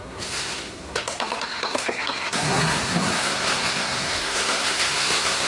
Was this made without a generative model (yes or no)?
no